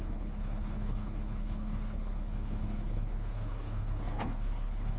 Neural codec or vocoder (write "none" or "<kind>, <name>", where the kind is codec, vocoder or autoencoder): codec, HILCodec